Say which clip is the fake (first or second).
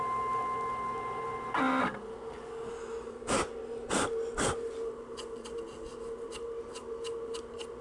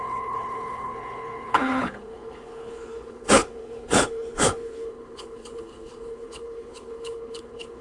second